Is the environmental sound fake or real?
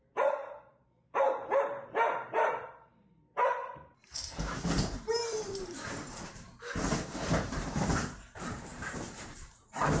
fake